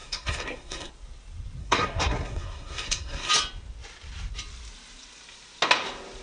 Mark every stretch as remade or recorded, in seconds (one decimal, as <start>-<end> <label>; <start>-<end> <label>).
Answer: 0.0-0.9 remade; 0.9-1.6 recorded; 1.6-3.3 remade; 3.3-6.2 recorded